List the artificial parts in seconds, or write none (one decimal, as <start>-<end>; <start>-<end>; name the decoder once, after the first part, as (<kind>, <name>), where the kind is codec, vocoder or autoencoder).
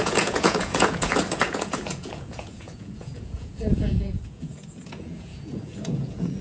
0.0-6.4 (vocoder, Vocos)